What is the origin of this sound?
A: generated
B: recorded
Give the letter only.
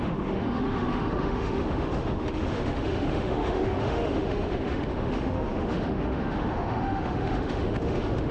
A